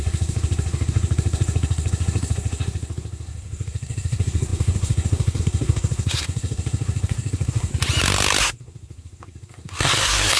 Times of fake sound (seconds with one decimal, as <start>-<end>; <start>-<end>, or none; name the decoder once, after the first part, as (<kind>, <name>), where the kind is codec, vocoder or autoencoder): 0.0-7.7 (codec, SNAC); 8.4-10.4